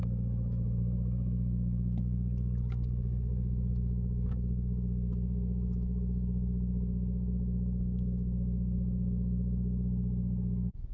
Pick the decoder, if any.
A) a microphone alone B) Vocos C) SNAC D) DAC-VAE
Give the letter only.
D